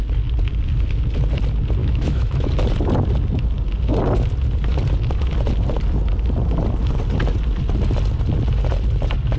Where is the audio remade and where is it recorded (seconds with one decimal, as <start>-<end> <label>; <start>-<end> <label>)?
0.0-1.8 recorded; 1.8-2.5 remade; 2.5-9.4 recorded